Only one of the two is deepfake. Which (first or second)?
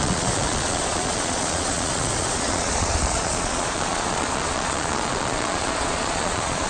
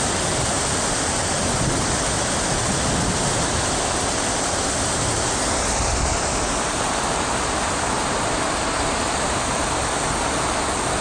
first